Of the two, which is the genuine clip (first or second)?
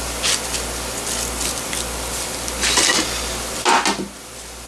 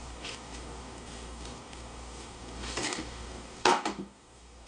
first